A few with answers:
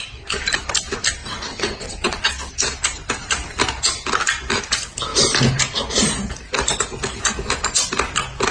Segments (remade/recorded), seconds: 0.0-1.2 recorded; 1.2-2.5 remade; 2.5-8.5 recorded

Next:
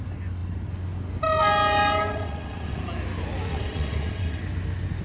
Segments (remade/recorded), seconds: 0.0-2.1 recorded; 2.1-2.8 remade; 2.8-3.5 recorded; 3.5-4.4 remade; 4.4-5.0 recorded

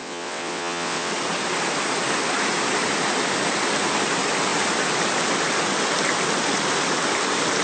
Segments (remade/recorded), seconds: 0.0-1.1 remade; 1.1-7.6 recorded